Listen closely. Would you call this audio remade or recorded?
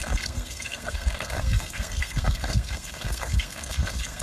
remade